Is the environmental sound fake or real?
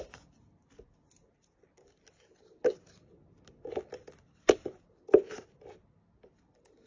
real